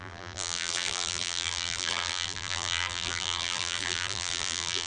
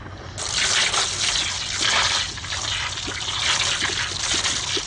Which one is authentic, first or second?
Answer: second